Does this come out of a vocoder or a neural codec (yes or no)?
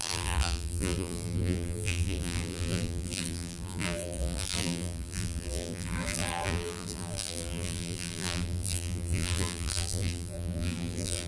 yes